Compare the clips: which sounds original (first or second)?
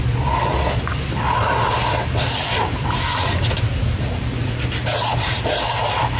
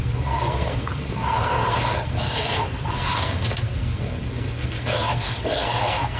first